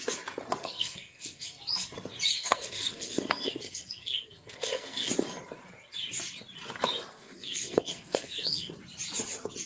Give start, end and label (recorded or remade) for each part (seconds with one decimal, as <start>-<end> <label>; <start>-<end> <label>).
0.0-0.6 recorded; 0.6-1.6 remade; 1.6-2.3 recorded; 2.3-5.1 remade; 5.1-7.1 recorded; 7.1-8.7 remade; 8.7-9.7 recorded